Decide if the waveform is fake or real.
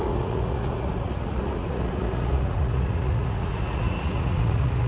fake